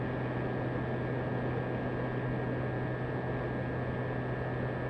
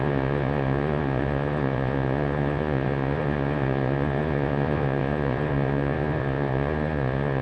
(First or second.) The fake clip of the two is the second